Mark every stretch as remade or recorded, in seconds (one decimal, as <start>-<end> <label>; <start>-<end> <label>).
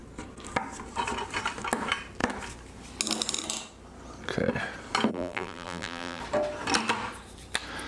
0.0-5.1 recorded; 5.1-6.2 remade; 6.2-7.9 recorded